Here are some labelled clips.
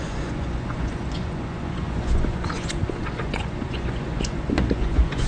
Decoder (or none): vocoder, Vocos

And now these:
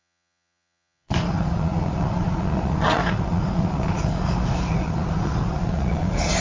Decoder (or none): vocoder, Vocos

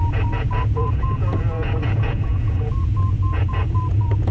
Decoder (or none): vocoder, Vocos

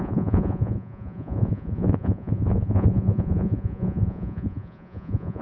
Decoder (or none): vocoder, Vocos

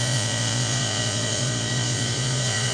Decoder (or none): vocoder, Vocos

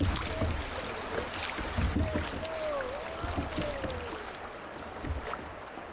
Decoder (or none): none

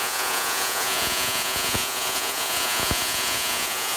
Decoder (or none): vocoder, Vocos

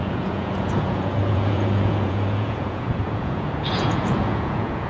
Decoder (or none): vocoder, Vocos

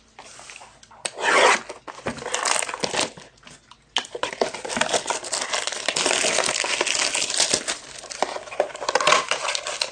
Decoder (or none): none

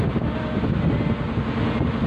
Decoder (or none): none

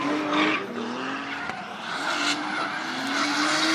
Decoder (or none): none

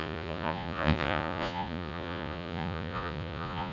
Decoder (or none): vocoder, Vocos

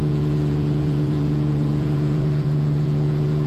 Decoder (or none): vocoder, Vocos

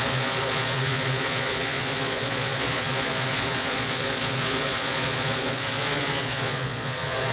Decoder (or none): vocoder, Vocos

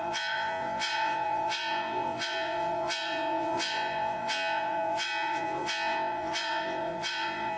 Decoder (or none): vocoder, Vocos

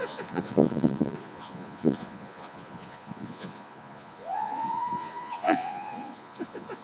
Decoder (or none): vocoder, Vocos